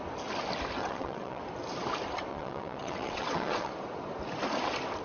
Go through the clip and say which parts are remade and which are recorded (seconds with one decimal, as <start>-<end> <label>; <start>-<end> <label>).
0.0-0.8 recorded; 0.8-1.4 remade; 1.4-2.3 recorded; 2.3-3.7 remade; 3.7-5.0 recorded